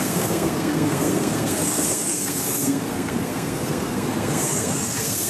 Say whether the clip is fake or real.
fake